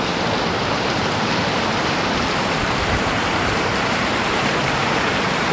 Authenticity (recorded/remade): remade